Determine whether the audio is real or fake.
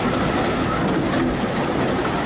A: real